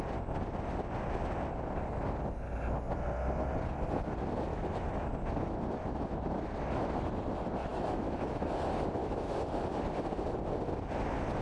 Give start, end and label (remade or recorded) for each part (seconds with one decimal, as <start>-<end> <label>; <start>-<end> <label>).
0.0-4.5 recorded; 4.5-5.1 remade; 5.1-7.7 recorded; 7.7-8.5 remade; 8.5-9.0 recorded; 9.0-9.5 remade; 9.5-11.4 recorded